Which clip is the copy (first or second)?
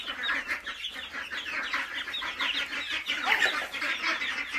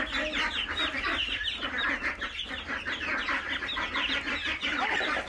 second